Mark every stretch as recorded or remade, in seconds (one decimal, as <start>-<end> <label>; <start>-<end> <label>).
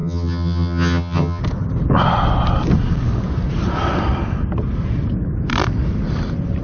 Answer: 0.0-1.4 remade; 1.4-6.6 recorded